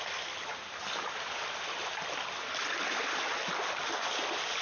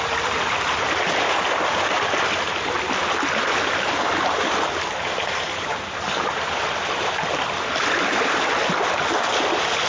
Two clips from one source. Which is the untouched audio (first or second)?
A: first